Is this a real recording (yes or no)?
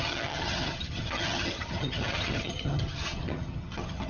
no